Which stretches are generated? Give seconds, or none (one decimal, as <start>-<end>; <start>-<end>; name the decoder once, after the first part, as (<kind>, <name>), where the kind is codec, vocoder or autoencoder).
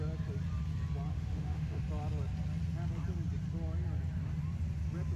1.1-1.8 (autoencoder, DAC-VAE)